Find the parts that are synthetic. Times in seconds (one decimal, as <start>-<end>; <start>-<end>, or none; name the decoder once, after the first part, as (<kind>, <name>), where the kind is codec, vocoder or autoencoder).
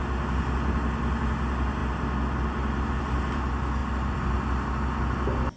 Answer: 3.8-4.7 (vocoder, BigVGAN v2)